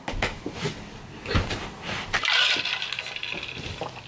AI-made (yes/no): no